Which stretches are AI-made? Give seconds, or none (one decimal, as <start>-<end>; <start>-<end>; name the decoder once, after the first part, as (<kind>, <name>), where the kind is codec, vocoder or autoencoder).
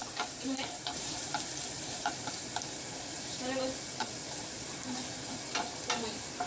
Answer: 0.0-3.6 (vocoder, BigVGAN v2); 4.2-5.3